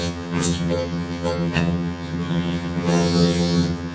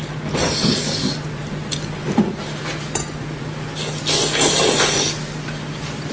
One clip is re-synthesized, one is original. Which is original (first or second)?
second